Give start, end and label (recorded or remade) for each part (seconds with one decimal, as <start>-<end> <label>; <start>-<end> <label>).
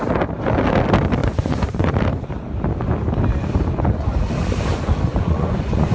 0.0-1.2 recorded; 1.2-1.9 remade; 1.9-5.1 recorded; 5.1-5.9 remade